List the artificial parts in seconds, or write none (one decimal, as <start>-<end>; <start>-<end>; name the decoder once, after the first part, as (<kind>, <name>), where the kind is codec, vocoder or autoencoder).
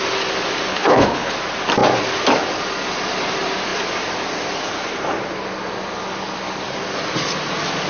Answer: 0.7-1.3 (codec, HILCodec)